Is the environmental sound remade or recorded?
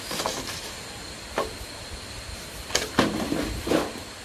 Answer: recorded